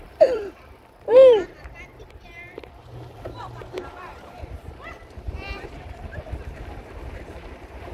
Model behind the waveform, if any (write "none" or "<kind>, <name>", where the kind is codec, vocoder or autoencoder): vocoder, BigVGAN v2